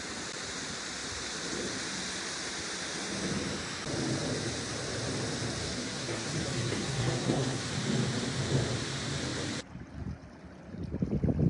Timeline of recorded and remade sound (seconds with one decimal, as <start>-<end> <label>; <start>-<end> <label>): 0.0-5.6 recorded; 5.6-7.7 remade; 7.7-11.5 recorded